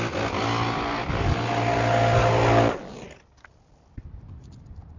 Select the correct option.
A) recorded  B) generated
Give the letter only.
A